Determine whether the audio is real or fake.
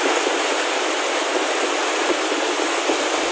real